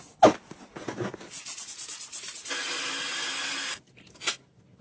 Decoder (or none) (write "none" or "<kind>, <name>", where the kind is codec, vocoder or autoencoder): none